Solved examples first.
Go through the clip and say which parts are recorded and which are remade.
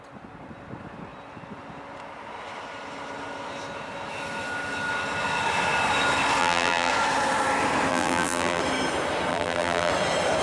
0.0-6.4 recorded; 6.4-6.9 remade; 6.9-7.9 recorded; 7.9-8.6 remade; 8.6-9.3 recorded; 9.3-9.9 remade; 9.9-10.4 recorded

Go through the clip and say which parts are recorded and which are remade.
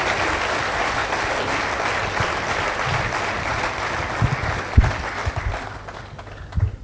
0.0-1.0 recorded; 1.0-1.5 remade; 1.5-6.8 recorded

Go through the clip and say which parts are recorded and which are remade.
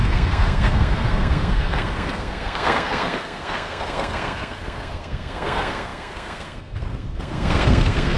0.0-8.2 remade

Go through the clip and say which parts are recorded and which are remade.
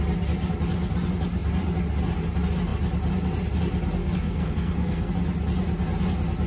0.0-4.0 recorded; 4.0-5.1 remade; 5.1-6.5 recorded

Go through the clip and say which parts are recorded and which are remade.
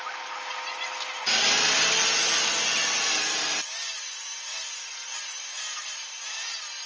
0.0-3.3 recorded; 3.3-4.9 remade; 4.9-6.9 recorded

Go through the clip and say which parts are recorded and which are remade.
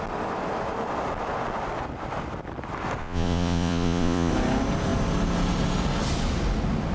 0.0-3.0 recorded; 3.0-4.3 remade; 4.3-6.9 recorded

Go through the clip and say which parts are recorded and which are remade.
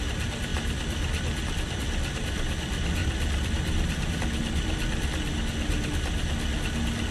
0.0-3.0 recorded; 3.0-4.2 remade; 4.2-7.1 recorded